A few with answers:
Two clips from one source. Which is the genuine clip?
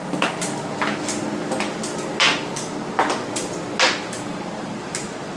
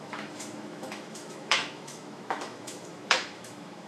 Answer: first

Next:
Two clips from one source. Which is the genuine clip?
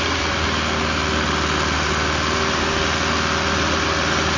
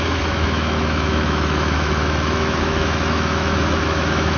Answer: first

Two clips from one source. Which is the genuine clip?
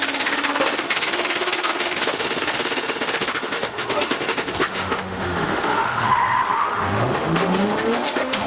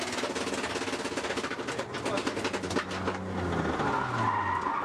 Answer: second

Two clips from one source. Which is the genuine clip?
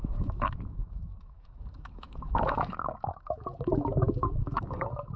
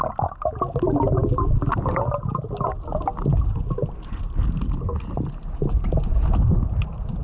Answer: second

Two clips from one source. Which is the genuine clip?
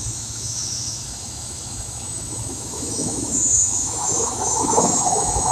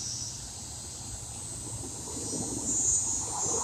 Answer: second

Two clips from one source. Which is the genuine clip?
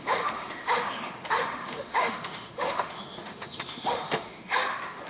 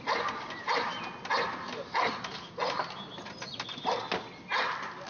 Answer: second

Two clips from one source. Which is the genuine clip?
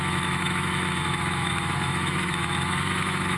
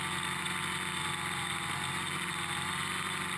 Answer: second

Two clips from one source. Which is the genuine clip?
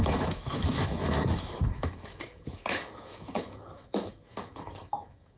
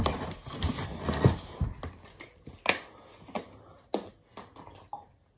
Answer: second